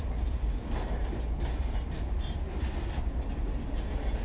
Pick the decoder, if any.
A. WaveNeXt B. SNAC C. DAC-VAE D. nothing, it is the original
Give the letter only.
D